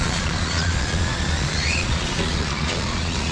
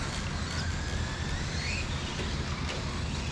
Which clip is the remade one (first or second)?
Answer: first